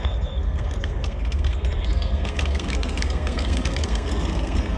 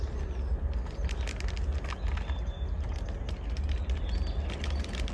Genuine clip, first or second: second